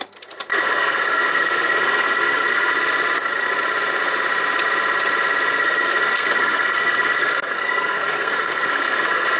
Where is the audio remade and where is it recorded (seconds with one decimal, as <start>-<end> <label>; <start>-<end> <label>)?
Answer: 0.0-0.5 recorded; 0.5-2.7 remade; 2.7-5.6 recorded; 5.6-9.4 remade